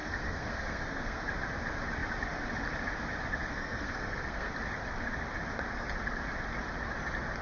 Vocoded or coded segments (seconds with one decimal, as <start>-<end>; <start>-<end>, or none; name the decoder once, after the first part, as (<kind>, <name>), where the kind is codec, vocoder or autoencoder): 0.0-1.2 (codec, SNAC); 3.4-4.5